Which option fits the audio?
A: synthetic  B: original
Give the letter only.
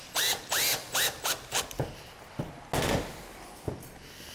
B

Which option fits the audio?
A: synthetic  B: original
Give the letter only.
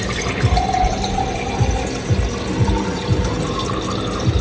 B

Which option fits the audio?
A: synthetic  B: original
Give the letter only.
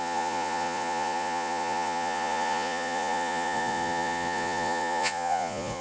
A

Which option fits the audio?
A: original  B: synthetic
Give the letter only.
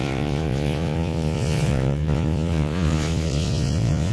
B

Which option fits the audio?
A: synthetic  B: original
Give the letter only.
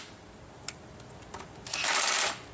B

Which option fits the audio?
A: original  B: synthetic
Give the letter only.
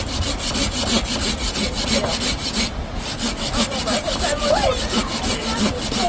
A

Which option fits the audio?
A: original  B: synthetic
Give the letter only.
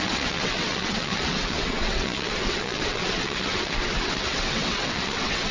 B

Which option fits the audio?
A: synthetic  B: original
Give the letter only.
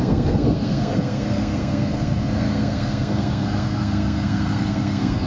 A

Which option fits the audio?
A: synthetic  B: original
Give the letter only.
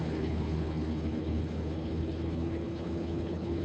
A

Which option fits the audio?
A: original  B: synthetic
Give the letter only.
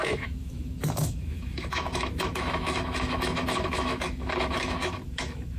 B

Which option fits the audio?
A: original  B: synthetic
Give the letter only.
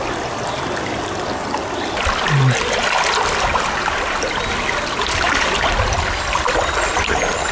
A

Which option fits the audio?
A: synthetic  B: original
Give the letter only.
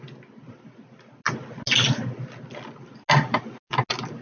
B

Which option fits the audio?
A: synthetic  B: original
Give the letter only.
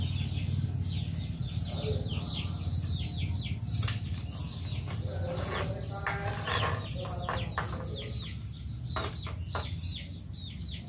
B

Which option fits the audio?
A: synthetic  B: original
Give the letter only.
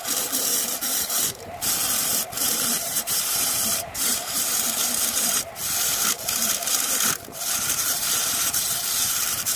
A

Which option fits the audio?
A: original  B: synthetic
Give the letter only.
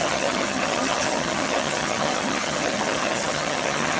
B